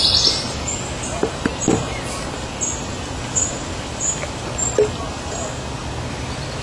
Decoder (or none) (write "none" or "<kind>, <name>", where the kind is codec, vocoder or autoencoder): none